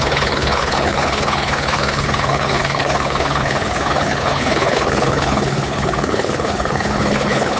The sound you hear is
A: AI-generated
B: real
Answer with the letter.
A